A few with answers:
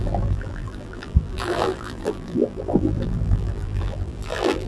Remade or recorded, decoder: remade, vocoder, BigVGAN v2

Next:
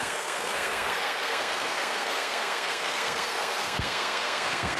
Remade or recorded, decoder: remade, codec, SNAC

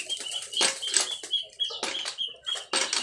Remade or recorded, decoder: recorded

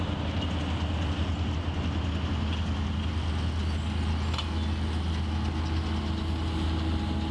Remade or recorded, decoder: recorded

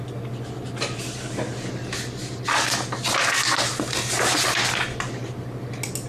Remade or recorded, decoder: recorded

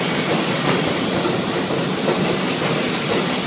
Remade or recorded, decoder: recorded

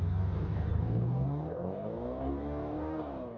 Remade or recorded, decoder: remade, codec, DAC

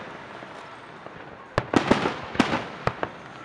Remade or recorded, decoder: recorded